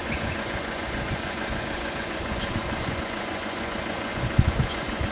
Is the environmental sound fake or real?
fake